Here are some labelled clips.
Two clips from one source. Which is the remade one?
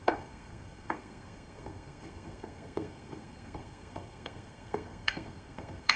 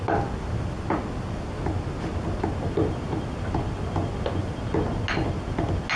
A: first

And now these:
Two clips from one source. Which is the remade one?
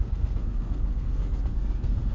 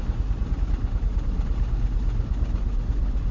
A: first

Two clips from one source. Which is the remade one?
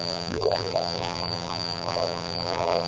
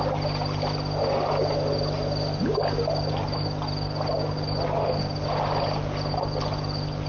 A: first